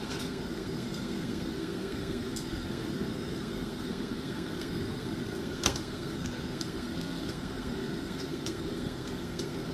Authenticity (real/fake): fake